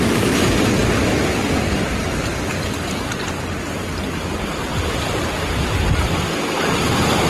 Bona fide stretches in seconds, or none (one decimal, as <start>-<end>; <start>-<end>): 0.0-7.3